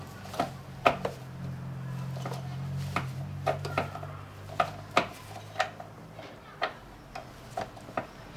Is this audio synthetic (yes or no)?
no